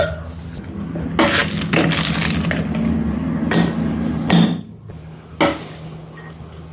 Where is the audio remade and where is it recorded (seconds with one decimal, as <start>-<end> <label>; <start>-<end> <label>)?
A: 0.0-6.7 recorded